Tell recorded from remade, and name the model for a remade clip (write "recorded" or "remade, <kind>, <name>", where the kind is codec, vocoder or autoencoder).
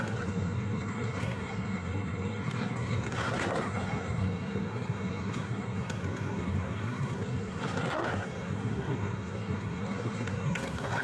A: remade, codec, SNAC